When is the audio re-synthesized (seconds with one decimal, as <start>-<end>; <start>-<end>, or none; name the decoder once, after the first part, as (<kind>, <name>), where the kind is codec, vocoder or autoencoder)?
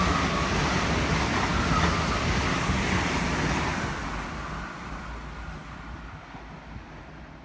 none